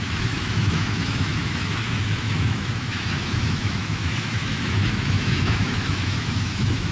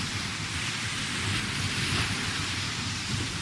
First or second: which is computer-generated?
first